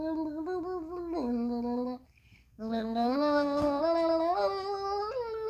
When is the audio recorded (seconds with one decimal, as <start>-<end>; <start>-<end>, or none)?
0.0-2.0; 3.8-5.5